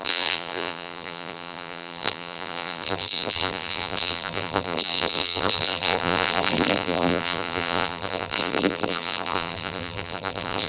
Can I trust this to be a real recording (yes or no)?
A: no